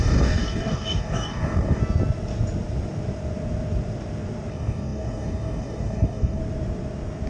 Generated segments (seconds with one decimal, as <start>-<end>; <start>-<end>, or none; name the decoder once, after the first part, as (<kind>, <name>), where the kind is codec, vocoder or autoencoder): 0.0-1.8 (codec, DAC); 4.5-6.4